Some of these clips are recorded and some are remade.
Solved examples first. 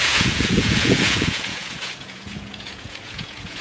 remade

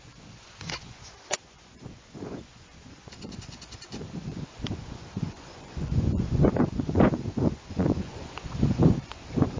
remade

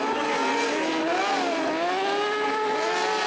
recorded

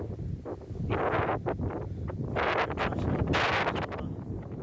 recorded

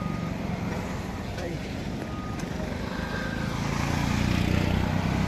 recorded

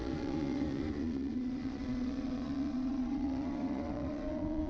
remade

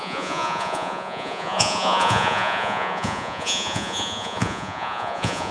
remade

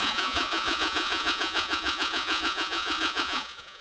remade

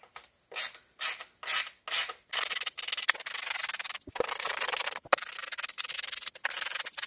recorded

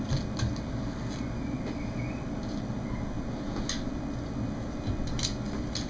recorded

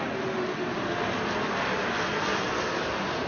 recorded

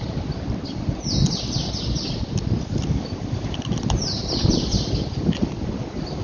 recorded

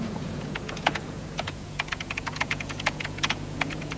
remade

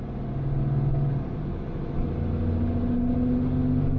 recorded